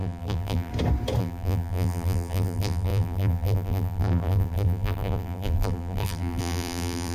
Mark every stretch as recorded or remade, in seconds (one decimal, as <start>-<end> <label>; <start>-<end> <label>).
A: 0.0-0.7 remade; 0.7-1.2 recorded; 1.2-7.1 remade